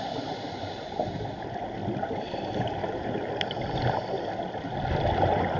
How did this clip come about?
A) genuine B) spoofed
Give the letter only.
A